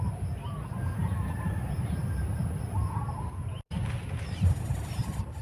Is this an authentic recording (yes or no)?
yes